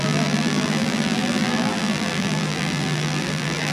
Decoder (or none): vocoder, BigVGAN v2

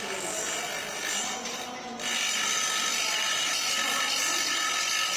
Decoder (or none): none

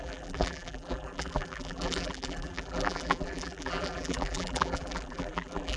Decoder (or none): vocoder, BigVGAN v2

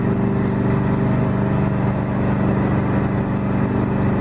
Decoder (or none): none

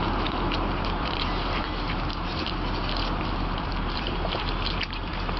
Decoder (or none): vocoder, BigVGAN v2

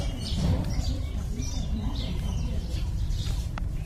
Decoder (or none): vocoder, BigVGAN v2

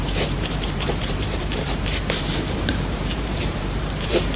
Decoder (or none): vocoder, BigVGAN v2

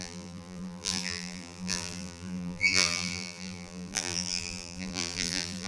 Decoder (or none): vocoder, BigVGAN v2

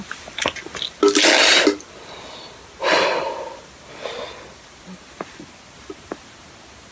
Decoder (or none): none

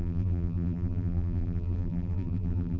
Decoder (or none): vocoder, BigVGAN v2